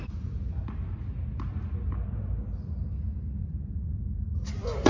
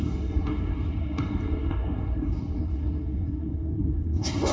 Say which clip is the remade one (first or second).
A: second